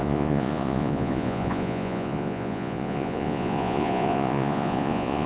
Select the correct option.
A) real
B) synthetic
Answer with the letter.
B